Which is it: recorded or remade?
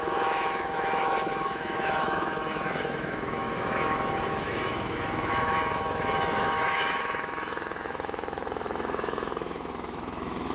remade